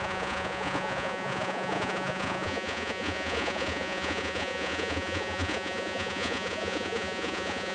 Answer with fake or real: fake